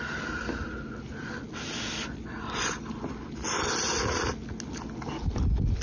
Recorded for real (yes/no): yes